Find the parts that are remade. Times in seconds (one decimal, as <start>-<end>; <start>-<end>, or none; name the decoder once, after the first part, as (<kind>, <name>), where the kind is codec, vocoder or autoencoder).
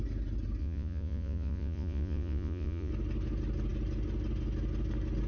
0.6-2.9 (vocoder, Vocos)